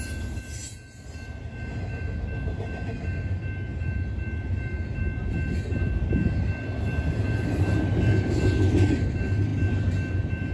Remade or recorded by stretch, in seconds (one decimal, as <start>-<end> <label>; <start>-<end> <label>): 0.0-10.5 recorded